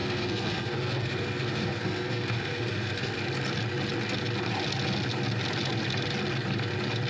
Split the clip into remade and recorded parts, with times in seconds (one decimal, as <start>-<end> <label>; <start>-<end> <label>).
0.0-3.2 remade; 3.2-7.1 recorded